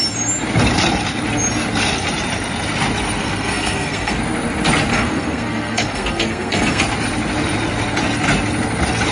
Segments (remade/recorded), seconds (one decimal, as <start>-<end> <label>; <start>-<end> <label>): 0.0-3.2 recorded; 3.2-4.1 remade; 4.1-4.9 recorded; 4.9-6.8 remade; 6.8-9.1 recorded